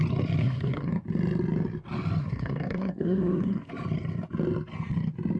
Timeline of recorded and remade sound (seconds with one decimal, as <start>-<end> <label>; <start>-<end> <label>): 0.0-0.4 recorded; 0.4-0.9 remade; 0.9-2.2 recorded; 2.2-3.7 remade; 3.7-5.4 recorded